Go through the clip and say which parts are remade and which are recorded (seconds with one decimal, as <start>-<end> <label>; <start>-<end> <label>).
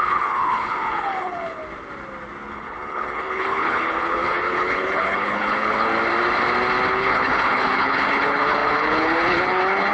0.0-1.6 remade; 1.6-2.5 recorded; 2.5-5.9 remade; 5.9-6.9 recorded; 6.9-9.9 remade